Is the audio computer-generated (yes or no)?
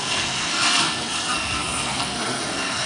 yes